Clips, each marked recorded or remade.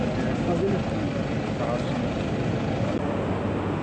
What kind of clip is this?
recorded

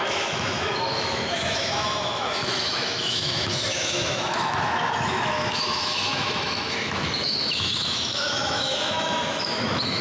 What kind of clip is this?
remade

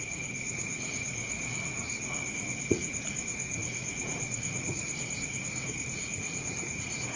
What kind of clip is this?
remade